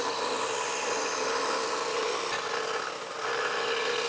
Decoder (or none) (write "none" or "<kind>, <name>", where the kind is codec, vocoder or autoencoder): none